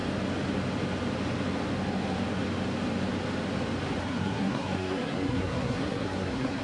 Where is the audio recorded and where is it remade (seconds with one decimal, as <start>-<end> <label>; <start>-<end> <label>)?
0.0-4.0 recorded; 4.0-6.6 remade